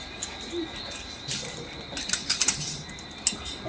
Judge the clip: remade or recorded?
recorded